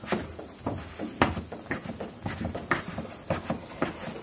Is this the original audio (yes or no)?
yes